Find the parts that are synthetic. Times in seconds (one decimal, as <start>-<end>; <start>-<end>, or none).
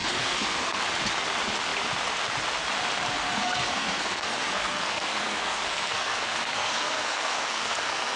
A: 0.0-0.8; 3.2-8.2